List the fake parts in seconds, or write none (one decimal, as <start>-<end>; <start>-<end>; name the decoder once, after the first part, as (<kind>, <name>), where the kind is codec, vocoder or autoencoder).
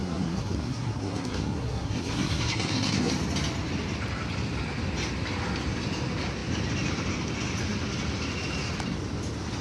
0.0-3.1 (codec, SNAC)